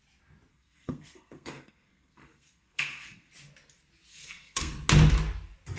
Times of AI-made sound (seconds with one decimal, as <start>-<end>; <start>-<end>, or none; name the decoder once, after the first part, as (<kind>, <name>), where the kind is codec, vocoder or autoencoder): 0.5-3.3 (codec, SNAC); 4.1-4.7